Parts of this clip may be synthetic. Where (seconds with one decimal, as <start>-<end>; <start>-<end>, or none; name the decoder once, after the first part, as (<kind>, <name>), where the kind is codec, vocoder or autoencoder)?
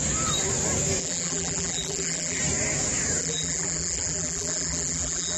1.0-2.4 (vocoder, BigVGAN v2); 3.2-5.4